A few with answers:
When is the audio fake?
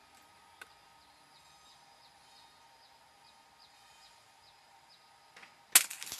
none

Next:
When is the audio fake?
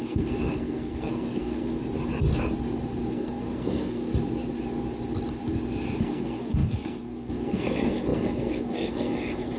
0.0-1.8; 3.1-4.1; 6.0-9.6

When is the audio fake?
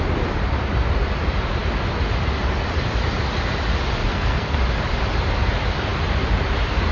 4.1-4.6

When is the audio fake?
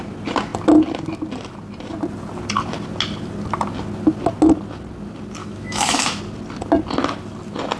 5.4-6.2